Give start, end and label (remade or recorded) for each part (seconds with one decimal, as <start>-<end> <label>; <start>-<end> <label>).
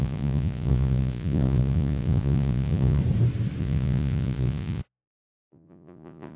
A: 0.0-3.0 remade; 3.0-3.6 recorded; 3.6-6.4 remade